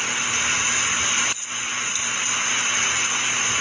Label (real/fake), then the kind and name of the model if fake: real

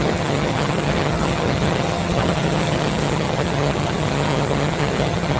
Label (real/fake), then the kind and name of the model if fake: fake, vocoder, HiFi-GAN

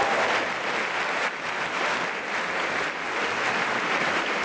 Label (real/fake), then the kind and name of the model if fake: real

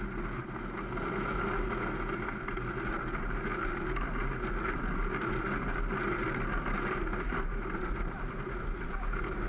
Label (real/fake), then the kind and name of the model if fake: real